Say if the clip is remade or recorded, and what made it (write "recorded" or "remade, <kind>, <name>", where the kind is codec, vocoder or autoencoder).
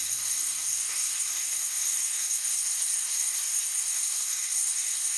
remade, codec, SNAC